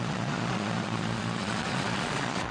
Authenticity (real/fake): fake